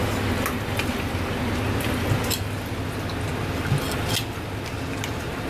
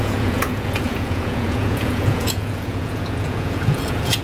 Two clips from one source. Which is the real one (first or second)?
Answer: first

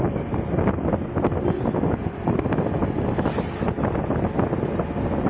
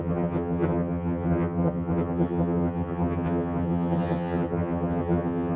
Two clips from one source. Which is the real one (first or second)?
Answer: first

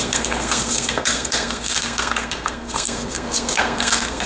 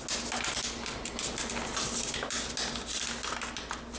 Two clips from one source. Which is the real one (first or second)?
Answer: second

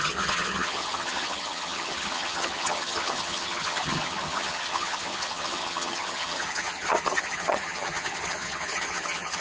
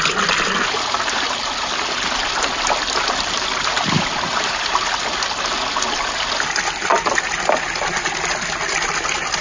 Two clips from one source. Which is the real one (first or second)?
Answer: second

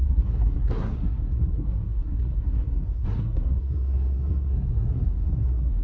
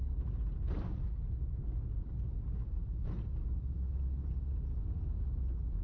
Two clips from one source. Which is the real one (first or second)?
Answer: second